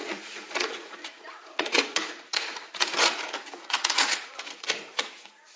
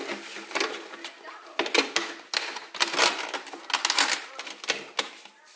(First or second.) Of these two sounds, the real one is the second